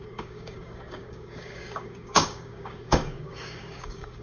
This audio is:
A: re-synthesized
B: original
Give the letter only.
A